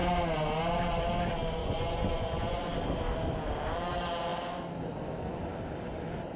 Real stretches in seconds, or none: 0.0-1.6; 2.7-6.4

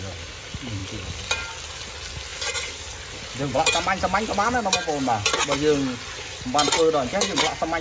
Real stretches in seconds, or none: 0.0-7.8

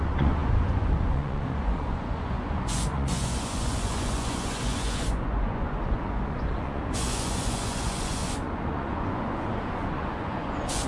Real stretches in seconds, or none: none

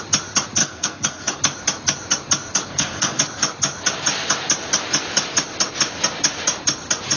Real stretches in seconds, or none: 0.0-0.6; 1.4-2.7; 3.2-7.2